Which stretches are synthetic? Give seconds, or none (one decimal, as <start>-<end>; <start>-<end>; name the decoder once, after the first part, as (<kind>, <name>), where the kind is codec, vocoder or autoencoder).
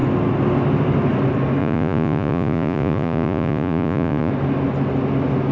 1.6-4.3 (vocoder, Vocos)